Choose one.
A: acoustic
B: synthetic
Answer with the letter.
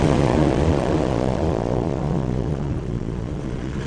B